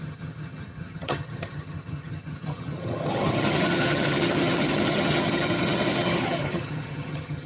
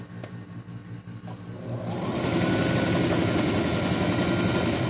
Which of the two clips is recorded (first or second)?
second